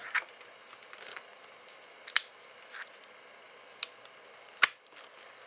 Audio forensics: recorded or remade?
recorded